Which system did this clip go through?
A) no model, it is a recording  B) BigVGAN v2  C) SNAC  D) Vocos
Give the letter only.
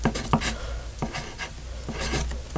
A